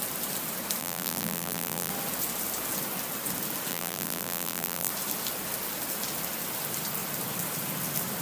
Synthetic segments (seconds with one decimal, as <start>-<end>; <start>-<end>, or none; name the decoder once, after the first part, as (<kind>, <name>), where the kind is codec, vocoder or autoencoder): 0.8-1.9 (vocoder, BigVGAN v2); 3.7-4.9

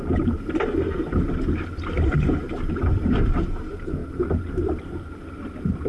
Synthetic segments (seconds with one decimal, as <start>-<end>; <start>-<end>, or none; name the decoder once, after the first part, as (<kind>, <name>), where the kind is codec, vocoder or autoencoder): 0.0-4.0 (vocoder, BigVGAN v2); 4.9-5.9

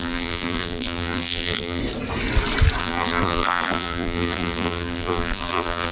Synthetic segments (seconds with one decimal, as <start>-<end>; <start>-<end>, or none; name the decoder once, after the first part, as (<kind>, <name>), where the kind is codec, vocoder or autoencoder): 0.0-1.8 (vocoder, BigVGAN v2); 2.8-5.9

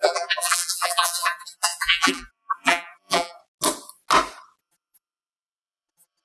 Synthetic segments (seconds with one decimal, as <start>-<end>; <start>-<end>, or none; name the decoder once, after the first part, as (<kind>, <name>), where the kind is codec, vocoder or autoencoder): 0.0-3.4 (vocoder, BigVGAN v2); 4.6-6.2

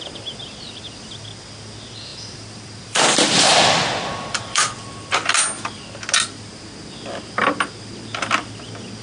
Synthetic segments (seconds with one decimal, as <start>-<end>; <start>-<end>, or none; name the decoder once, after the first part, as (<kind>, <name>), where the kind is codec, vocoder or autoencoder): 2.1-5.1 (vocoder, BigVGAN v2)